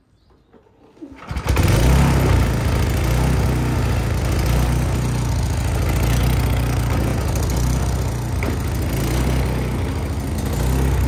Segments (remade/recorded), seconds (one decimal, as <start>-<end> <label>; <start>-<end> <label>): 0.0-11.1 recorded